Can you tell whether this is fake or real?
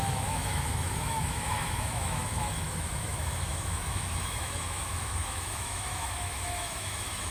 fake